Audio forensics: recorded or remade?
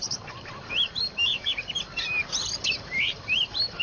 remade